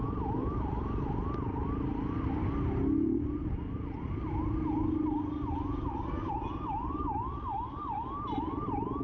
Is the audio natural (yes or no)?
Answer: yes